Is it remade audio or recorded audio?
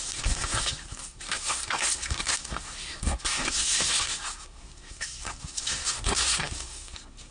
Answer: remade